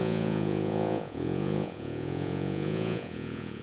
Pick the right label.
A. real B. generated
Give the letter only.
B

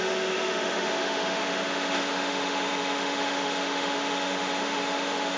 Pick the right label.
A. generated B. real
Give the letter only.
A